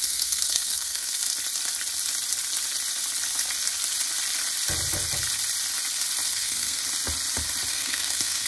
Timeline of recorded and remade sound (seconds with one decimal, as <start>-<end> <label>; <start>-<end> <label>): 0.0-1.2 remade; 1.2-6.3 recorded; 6.3-6.8 remade; 6.8-7.7 recorded; 7.7-8.5 remade